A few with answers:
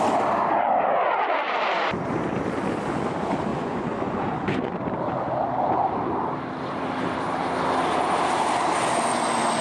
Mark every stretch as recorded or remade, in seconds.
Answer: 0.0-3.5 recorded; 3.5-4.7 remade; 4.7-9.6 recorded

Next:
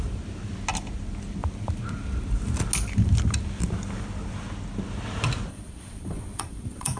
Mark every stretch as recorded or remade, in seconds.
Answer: 0.0-5.5 recorded; 5.5-7.0 remade

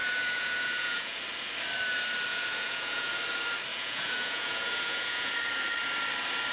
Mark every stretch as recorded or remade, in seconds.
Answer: 0.0-1.2 remade; 1.2-2.3 recorded; 2.3-3.2 remade; 3.2-3.7 recorded; 3.7-5.3 remade; 5.3-6.5 recorded

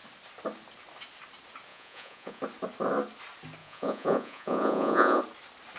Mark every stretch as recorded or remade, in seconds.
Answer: 0.0-1.7 recorded; 1.7-2.4 remade; 2.4-3.6 recorded; 3.6-5.2 remade; 5.2-5.8 recorded

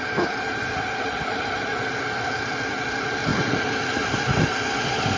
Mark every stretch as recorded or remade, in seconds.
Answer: 0.0-5.2 recorded

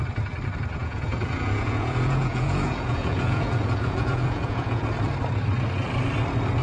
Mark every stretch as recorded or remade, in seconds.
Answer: 0.0-0.8 recorded; 0.8-4.8 remade; 4.8-6.6 recorded